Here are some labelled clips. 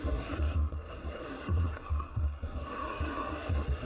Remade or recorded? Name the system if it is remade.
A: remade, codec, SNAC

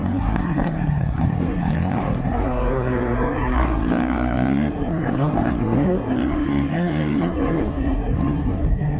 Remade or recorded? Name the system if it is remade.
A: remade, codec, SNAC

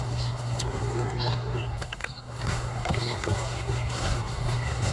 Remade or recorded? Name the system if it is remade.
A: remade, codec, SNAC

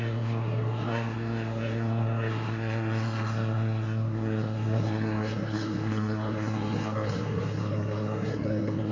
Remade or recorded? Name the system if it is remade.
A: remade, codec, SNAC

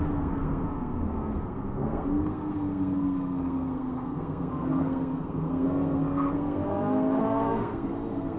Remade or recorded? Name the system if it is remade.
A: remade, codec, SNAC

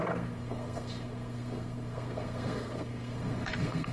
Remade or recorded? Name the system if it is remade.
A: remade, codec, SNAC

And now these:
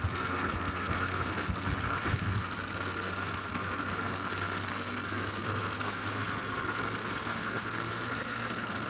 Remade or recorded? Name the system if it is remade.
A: remade, codec, SNAC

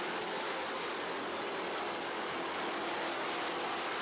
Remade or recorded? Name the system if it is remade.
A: recorded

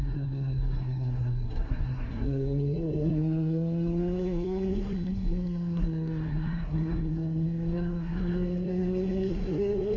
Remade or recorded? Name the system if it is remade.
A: remade, codec, SNAC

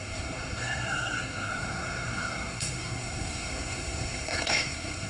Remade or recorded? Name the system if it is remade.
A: remade, codec, SNAC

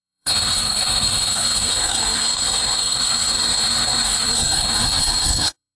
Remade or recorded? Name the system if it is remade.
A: remade, codec, SNAC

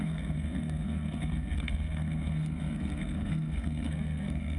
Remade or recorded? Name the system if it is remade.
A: remade, codec, SNAC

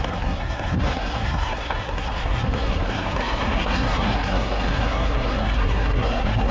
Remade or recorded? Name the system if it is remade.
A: remade, codec, SNAC